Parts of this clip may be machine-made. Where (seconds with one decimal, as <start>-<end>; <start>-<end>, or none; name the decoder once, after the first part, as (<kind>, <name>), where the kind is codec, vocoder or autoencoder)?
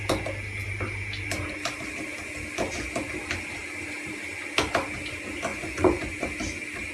5.5-6.3 (vocoder, Vocos)